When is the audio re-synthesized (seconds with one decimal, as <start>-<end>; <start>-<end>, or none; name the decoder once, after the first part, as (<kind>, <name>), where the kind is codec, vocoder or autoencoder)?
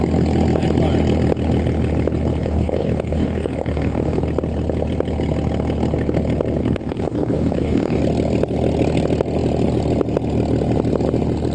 2.4-4.2 (codec, DAC); 6.6-8.0